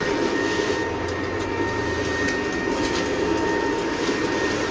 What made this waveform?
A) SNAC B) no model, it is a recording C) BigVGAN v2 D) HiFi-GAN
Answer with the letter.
B